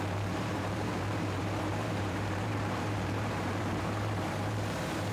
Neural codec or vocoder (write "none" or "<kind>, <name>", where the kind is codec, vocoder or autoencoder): vocoder, BigVGAN v2